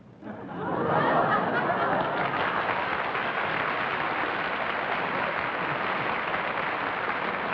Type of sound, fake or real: real